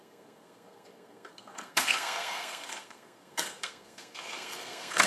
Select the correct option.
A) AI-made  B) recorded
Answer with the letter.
A